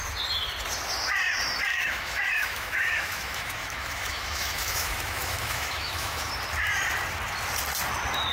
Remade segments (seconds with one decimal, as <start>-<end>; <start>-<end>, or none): 1.7-6.3